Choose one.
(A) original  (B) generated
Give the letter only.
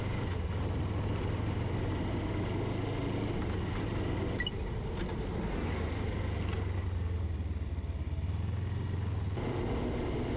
A